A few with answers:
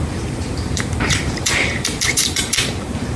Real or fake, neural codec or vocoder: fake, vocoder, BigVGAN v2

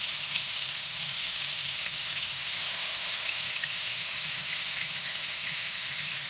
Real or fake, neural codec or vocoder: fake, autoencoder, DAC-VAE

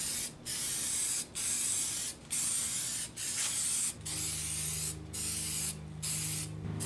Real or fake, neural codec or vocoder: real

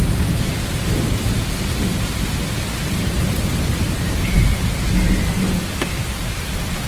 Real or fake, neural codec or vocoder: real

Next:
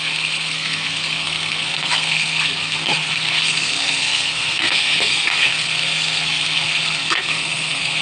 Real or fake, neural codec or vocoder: fake, codec, SNAC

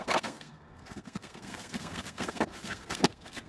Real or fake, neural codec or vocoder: fake, codec, SNAC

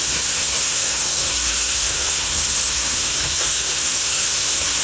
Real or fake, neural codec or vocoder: fake, codec, SNAC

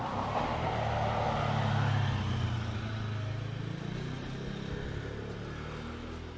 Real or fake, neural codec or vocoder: real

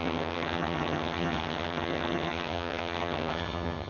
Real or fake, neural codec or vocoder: fake, vocoder, HiFi-GAN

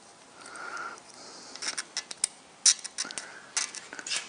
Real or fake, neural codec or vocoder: real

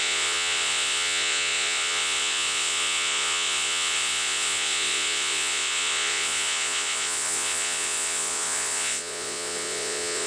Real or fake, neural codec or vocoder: fake, vocoder, Vocos